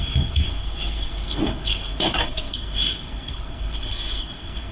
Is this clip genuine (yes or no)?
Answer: no